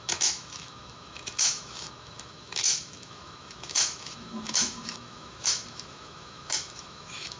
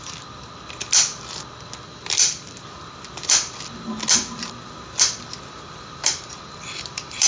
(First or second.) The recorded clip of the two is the second